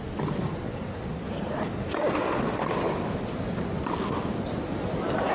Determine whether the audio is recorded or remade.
recorded